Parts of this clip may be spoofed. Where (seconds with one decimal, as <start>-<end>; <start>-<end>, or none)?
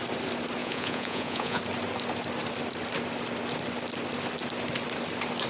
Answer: 0.6-1.6